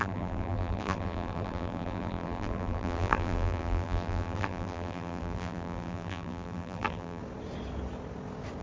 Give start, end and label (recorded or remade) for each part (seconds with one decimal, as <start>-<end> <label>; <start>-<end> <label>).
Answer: 0.0-7.2 remade; 7.2-8.6 recorded